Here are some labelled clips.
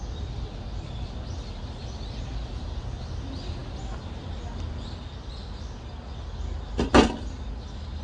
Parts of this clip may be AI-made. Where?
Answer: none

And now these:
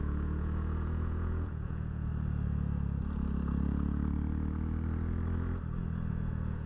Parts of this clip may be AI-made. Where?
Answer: 0.0-2.1; 6.1-6.7

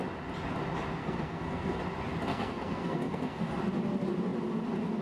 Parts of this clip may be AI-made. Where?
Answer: 1.0-1.8; 2.3-3.5

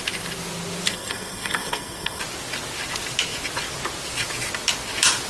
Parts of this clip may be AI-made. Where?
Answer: 0.9-2.2

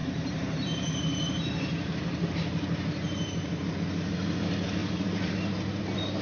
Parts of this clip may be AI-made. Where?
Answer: 0.0-3.7; 4.8-5.3